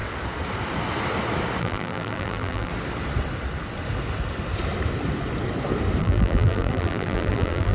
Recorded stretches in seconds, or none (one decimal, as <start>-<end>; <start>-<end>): 0.0-1.6; 2.7-6.0